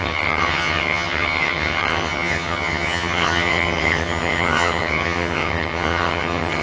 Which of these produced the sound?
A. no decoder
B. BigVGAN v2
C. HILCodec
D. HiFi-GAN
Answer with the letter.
D